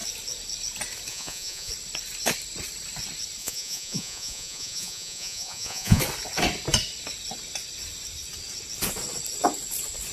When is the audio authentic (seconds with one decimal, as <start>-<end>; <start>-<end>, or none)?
0.0-1.1; 1.7-3.4; 6.0-10.1